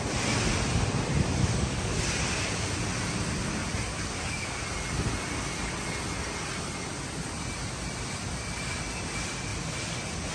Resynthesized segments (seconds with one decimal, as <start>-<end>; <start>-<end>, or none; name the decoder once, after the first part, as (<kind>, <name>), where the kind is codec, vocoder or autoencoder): 1.4-2.0 (codec, DAC); 3.9-4.6

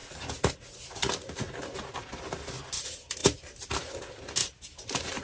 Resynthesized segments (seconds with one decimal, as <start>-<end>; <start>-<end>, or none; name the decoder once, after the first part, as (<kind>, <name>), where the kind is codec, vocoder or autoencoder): none

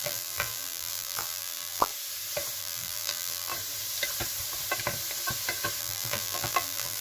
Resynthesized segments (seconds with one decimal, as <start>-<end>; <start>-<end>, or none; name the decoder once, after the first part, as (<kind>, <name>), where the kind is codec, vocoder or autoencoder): 0.0-1.9 (vocoder, BigVGAN v2); 2.6-3.5; 5.8-7.0